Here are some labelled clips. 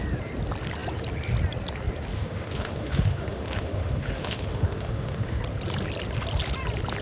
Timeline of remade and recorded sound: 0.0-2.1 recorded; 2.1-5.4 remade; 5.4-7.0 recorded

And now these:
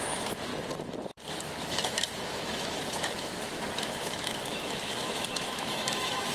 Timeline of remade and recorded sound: 0.0-0.5 remade; 0.5-1.3 recorded; 1.3-6.3 remade

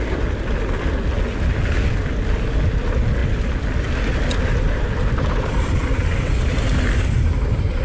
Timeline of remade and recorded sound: 0.0-7.8 recorded

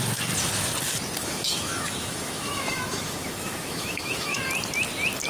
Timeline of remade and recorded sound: 0.0-1.2 recorded; 1.2-4.4 remade; 4.4-5.3 recorded

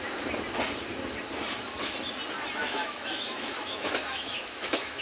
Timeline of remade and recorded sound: 0.0-2.6 recorded; 2.6-5.0 remade

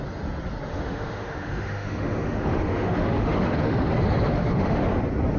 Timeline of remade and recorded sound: 0.0-0.7 recorded; 0.7-3.9 remade; 3.9-4.3 recorded; 4.3-4.8 remade; 4.8-5.4 recorded

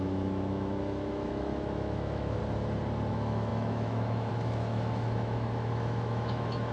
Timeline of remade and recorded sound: 0.0-2.4 remade; 2.4-3.1 recorded; 3.1-6.7 remade